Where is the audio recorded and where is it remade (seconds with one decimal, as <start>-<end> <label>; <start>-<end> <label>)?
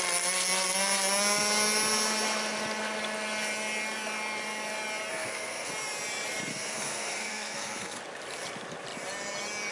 0.0-5.1 recorded; 5.1-5.7 remade; 5.7-6.5 recorded; 6.5-8.0 remade; 8.0-9.7 recorded